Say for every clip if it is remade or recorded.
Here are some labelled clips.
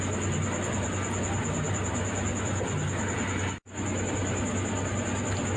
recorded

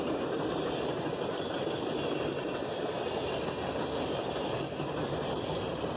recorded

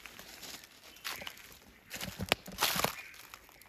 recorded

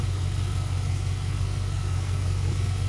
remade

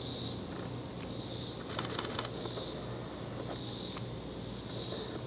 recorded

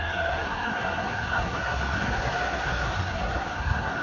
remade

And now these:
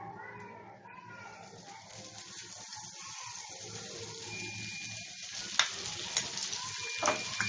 recorded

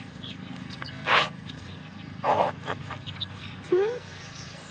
remade